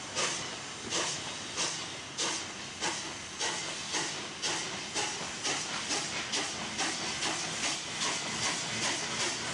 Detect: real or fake real